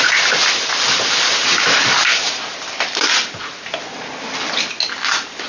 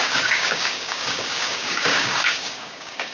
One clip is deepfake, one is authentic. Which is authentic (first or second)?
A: first